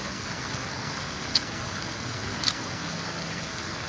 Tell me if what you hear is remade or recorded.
remade